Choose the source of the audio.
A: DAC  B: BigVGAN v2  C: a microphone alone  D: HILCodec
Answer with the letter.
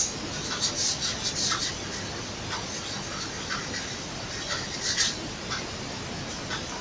C